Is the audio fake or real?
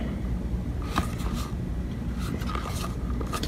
real